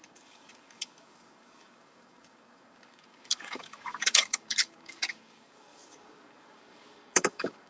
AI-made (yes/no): yes